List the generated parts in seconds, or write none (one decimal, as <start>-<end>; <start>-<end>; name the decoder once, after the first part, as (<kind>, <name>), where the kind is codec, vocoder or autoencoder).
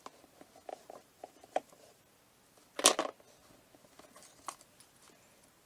0.7-2.0 (vocoder, BigVGAN v2)